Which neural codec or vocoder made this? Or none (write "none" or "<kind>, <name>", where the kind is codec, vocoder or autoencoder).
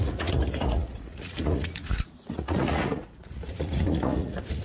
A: vocoder, Vocos